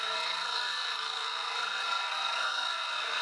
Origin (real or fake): fake